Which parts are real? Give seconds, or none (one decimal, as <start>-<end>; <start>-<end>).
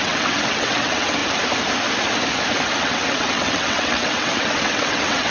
1.2-2.8